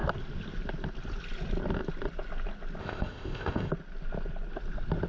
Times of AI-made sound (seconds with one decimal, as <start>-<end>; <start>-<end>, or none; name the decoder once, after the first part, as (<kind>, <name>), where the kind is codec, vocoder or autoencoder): 2.8-3.7 (codec, ZipCodec)

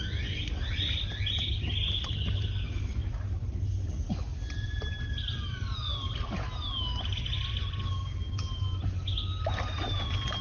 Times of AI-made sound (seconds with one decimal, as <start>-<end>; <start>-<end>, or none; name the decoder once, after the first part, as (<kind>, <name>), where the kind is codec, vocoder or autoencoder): none

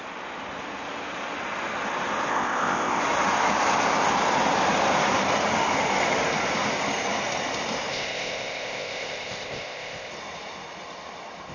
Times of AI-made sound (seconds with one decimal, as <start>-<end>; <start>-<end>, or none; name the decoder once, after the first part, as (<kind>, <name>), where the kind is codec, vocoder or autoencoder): 2.3-3.0 (codec, ZipCodec); 7.9-10.1